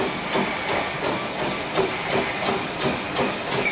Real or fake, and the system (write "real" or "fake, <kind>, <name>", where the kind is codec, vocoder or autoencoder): fake, vocoder, BigVGAN v2